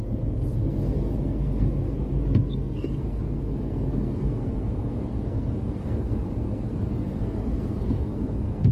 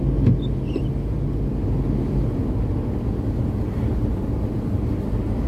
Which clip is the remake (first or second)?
first